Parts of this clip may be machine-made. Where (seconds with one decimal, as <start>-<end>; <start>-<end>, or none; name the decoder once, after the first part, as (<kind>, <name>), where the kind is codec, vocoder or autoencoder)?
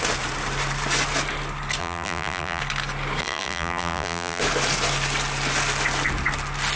1.8-2.6 (vocoder, BigVGAN v2); 3.2-4.4